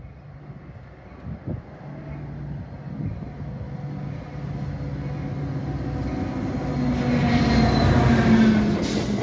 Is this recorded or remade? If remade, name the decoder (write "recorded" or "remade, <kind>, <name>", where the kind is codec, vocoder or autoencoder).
recorded